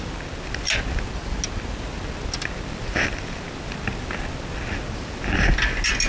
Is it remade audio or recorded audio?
recorded